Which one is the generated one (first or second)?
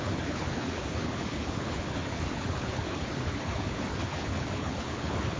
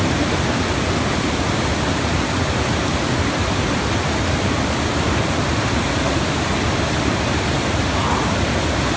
first